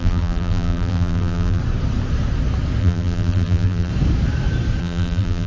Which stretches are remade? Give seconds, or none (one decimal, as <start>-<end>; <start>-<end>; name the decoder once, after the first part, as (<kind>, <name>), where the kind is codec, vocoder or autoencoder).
0.0-1.6 (vocoder, BigVGAN v2); 2.8-3.9; 4.8-5.5